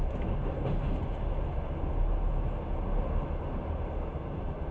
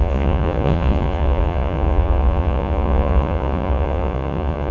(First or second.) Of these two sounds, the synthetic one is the second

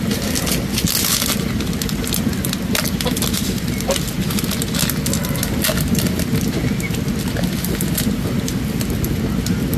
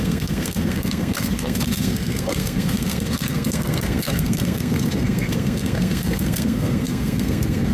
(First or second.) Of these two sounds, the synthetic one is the second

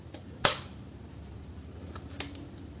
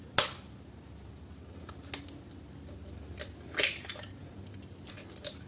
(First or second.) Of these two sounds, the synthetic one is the first